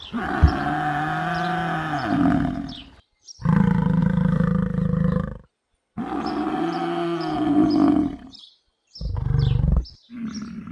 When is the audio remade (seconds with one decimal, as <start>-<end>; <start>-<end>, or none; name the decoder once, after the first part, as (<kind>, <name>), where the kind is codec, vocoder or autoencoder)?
4.0-5.5 (vocoder, BigVGAN v2)